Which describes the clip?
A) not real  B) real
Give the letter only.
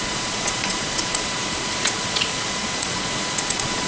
A